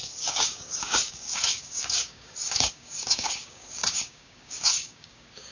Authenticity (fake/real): fake